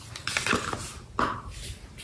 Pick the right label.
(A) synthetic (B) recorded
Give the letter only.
B